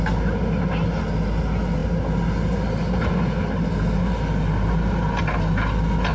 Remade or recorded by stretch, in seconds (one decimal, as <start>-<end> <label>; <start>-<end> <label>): 0.0-6.1 recorded